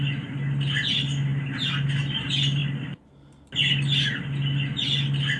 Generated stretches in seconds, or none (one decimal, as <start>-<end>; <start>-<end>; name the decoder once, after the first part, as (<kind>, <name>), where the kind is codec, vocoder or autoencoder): none